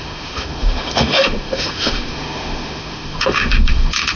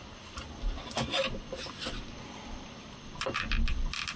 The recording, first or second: second